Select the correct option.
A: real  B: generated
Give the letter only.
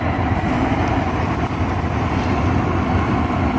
A